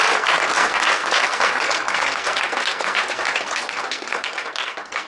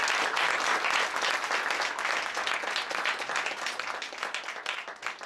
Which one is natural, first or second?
second